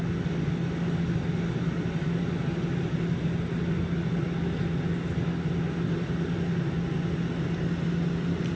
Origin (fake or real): real